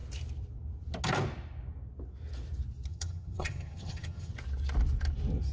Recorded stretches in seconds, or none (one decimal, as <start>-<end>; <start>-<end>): 0.0-2.9; 4.3-5.5